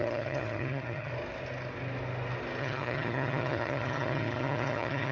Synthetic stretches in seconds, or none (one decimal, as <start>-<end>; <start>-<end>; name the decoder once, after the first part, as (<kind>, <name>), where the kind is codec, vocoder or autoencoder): 0.0-1.1 (vocoder, HiFi-GAN); 2.6-5.1